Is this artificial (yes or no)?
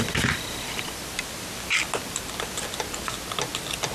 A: no